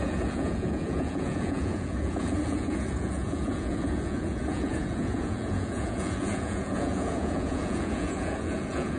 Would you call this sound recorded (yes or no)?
no